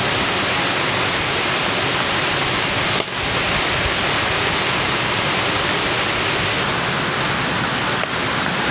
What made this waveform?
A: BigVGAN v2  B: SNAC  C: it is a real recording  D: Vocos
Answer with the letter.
C